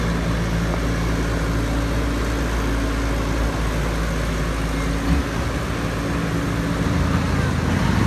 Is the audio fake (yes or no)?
no